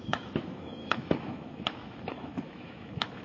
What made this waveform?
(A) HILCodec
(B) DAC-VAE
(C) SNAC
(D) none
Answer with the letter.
B